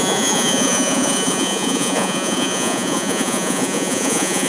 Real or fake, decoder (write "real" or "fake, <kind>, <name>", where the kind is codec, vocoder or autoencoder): fake, vocoder, Vocos